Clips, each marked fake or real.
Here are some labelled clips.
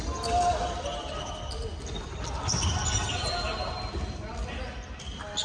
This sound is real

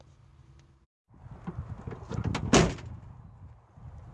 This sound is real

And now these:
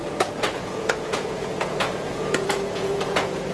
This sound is fake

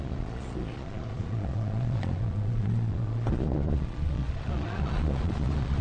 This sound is fake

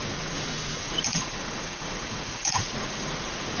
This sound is fake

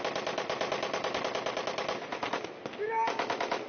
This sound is real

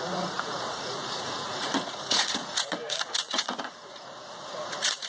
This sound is fake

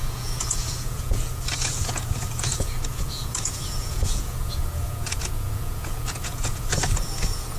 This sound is fake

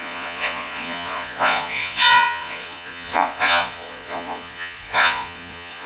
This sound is fake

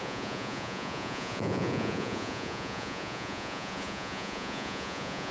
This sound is fake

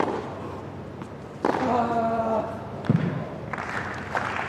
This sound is real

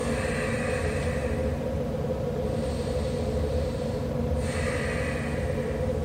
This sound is real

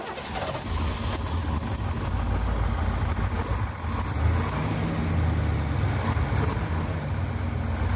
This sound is real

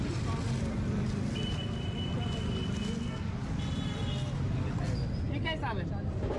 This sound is real